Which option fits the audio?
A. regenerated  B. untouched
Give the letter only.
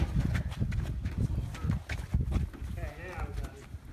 B